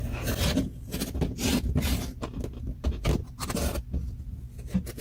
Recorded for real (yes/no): yes